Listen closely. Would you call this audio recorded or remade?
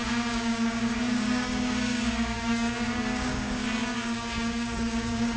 remade